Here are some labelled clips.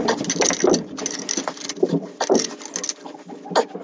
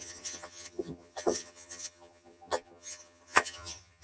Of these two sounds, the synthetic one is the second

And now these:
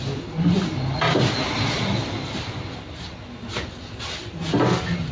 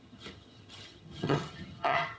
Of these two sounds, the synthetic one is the second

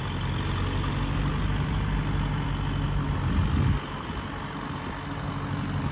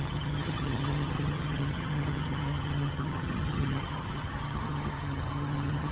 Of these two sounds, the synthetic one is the second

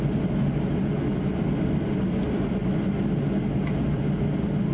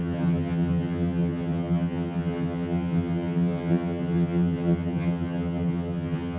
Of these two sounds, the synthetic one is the second